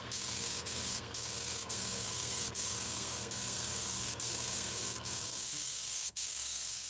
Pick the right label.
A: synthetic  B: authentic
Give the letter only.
A